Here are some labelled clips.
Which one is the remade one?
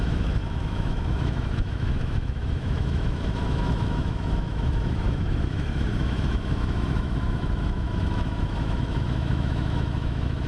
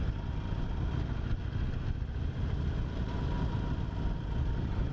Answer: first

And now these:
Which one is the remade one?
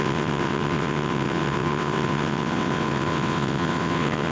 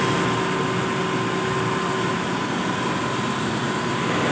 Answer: first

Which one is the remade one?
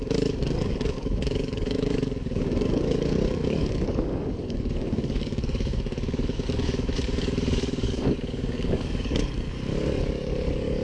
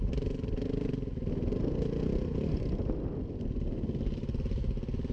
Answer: first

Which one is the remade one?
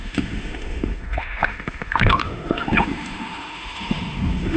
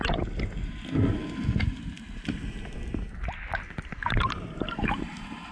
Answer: first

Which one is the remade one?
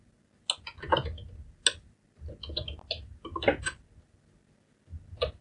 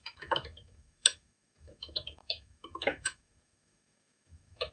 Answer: second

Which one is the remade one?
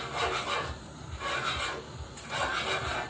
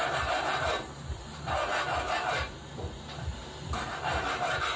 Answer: second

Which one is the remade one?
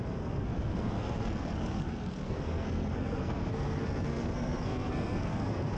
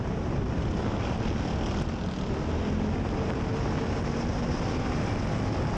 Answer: first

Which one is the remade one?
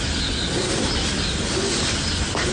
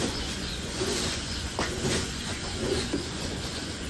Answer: second